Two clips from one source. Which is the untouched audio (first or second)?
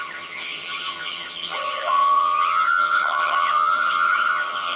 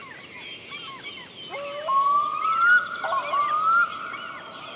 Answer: second